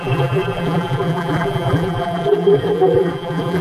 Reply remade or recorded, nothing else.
remade